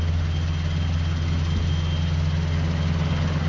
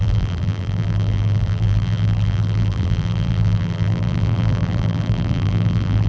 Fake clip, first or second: second